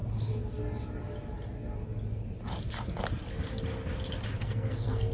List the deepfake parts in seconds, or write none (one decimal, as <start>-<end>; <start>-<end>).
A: 4.4-5.1